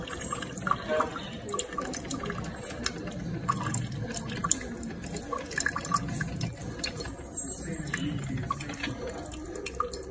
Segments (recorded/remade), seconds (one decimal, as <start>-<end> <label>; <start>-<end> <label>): 0.0-10.1 recorded